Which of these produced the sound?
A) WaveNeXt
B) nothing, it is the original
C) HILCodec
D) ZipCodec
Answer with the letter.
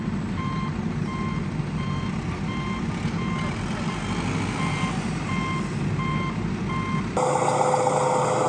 B